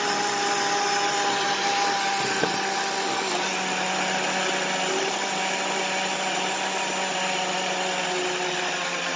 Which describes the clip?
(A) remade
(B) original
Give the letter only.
B